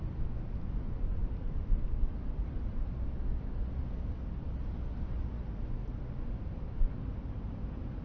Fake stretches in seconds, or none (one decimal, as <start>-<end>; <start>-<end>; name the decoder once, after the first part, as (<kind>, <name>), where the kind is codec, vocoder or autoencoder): none